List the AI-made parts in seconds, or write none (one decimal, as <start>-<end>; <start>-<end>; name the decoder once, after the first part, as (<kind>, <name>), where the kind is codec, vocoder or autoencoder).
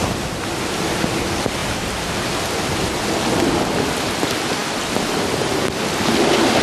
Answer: none